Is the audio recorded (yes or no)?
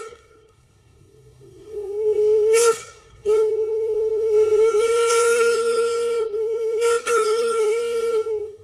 no